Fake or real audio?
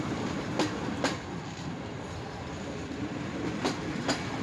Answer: real